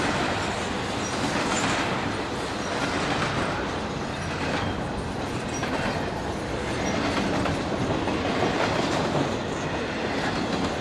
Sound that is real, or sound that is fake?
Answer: real